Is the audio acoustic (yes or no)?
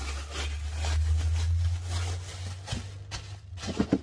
yes